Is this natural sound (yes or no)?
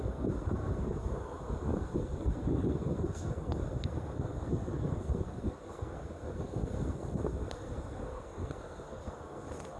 no